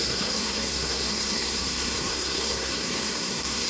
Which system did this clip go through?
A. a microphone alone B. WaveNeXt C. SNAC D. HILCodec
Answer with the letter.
C